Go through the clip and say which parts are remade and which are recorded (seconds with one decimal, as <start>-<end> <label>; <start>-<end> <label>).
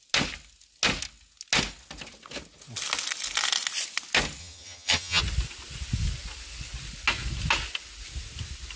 0.0-4.4 recorded; 4.4-5.2 remade; 5.2-8.8 recorded